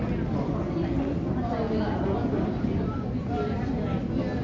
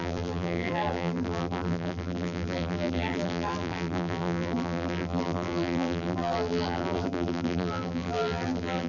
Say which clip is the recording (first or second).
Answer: first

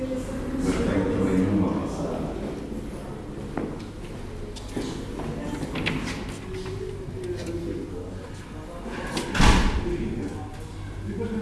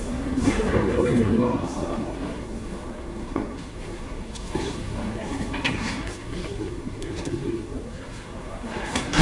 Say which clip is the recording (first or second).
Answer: first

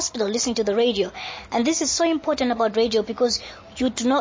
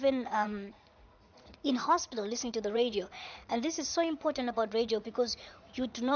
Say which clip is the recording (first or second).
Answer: first